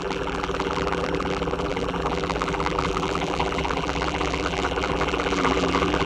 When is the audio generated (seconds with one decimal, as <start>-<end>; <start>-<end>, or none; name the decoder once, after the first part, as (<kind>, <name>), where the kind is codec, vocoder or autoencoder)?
0.0-6.1 (vocoder, BigVGAN v2)